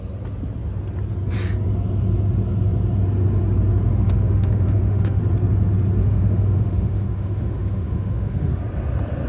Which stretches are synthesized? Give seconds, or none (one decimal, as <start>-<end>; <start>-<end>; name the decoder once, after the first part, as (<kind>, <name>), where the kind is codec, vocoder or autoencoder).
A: 3.9-5.2 (autoencoder, DAC-VAE); 6.0-8.6